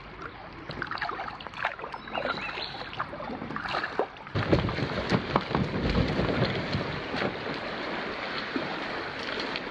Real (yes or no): yes